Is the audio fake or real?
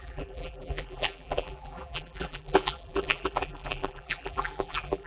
fake